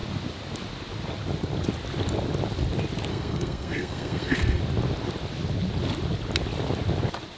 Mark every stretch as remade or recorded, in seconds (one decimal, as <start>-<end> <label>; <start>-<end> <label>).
0.0-3.1 recorded; 3.1-4.6 remade; 4.6-7.4 recorded